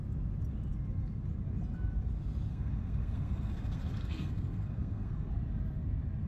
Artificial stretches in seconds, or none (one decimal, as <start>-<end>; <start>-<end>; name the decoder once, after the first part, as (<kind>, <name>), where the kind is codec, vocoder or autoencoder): 2.5-5.3 (codec, SNAC)